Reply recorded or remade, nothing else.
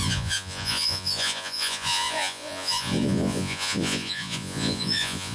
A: remade